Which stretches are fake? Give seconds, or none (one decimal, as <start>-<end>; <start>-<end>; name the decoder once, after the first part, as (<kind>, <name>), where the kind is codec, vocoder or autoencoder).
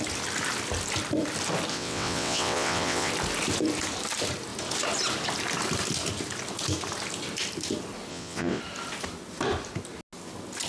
1.7-3.1 (vocoder, WaveNeXt); 8.1-8.6